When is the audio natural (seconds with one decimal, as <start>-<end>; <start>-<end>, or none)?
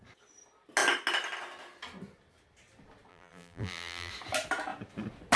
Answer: 0.0-3.1; 4.1-5.4